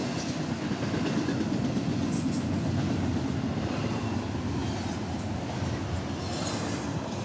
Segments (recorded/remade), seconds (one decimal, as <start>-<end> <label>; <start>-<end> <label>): 0.0-0.7 remade; 0.7-1.9 recorded; 1.9-2.9 remade; 2.9-7.2 recorded